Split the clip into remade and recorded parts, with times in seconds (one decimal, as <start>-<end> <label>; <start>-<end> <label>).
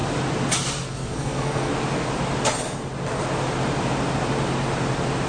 0.0-0.8 recorded; 0.8-1.7 remade; 1.7-5.3 recorded